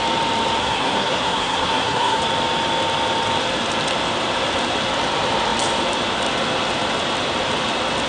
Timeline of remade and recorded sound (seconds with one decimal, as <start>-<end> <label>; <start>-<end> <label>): 0.0-0.6 recorded; 0.6-2.2 remade; 2.2-8.1 recorded